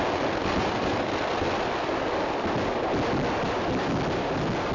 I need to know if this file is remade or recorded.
recorded